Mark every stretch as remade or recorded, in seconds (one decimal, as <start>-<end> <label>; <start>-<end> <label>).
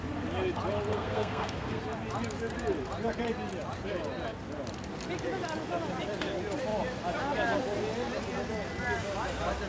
0.0-0.9 recorded; 0.9-1.8 remade; 1.8-9.7 recorded